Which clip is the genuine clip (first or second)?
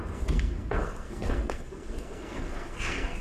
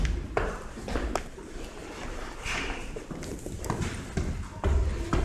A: second